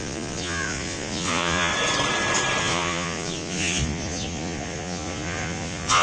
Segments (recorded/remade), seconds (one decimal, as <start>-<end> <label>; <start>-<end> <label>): 0.0-1.7 remade; 1.7-2.6 recorded; 2.6-6.0 remade